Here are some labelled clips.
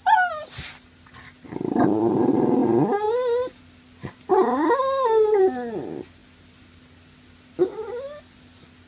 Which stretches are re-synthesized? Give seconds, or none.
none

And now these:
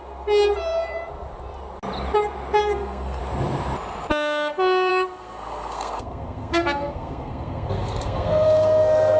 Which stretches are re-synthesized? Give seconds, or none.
2.6-3.2 (codec, SNAC); 4.9-9.2